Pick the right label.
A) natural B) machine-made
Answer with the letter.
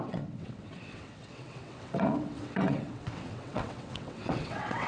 B